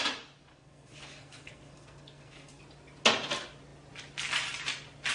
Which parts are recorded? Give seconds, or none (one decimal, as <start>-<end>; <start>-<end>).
0.0-0.5; 2.6-5.1

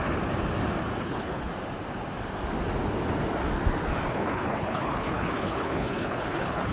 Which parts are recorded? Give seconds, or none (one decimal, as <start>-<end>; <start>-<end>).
0.0-1.0; 1.5-4.1